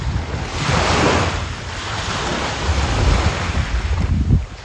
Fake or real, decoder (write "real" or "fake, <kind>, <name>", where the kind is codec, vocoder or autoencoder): real